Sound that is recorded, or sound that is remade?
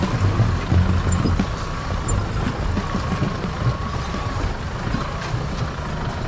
recorded